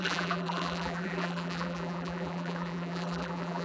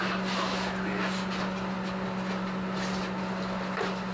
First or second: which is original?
second